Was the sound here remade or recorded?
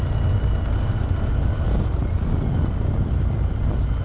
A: recorded